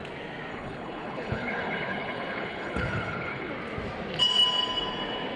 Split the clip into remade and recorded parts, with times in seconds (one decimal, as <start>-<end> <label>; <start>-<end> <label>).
0.0-0.5 recorded; 0.5-3.5 remade; 3.5-5.4 recorded